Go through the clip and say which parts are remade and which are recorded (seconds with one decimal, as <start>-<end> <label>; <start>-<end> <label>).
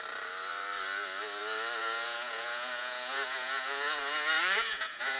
0.0-1.8 recorded; 1.8-5.2 remade